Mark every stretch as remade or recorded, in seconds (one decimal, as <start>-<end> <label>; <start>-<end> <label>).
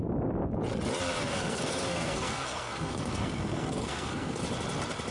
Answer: 0.0-1.3 recorded; 1.3-4.4 remade; 4.4-5.1 recorded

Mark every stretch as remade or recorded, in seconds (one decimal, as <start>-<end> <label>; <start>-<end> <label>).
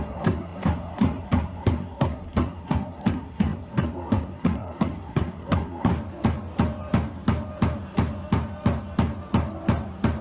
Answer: 0.0-5.9 remade; 5.9-10.2 recorded